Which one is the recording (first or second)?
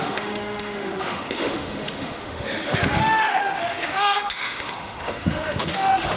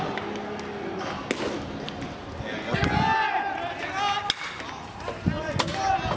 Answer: second